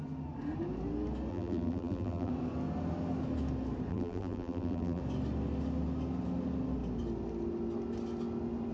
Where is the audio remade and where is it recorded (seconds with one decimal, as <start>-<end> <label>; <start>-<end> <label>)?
0.0-1.3 recorded; 1.3-2.3 remade; 2.3-3.9 recorded; 3.9-5.0 remade; 5.0-8.7 recorded